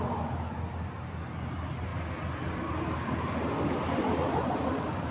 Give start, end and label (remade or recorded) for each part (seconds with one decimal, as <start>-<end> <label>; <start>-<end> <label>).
0.0-5.1 recorded